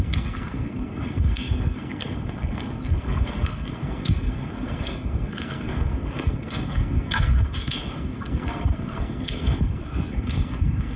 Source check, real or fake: fake